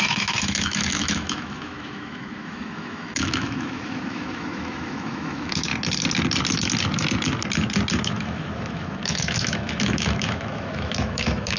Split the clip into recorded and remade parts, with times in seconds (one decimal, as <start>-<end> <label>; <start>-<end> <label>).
0.0-5.7 remade; 5.7-8.1 recorded; 8.1-11.6 remade